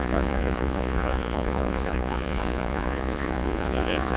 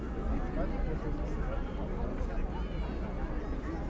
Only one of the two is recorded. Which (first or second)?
second